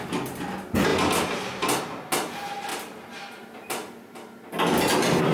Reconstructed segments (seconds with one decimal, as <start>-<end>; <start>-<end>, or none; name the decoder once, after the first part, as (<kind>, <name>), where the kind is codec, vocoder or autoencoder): none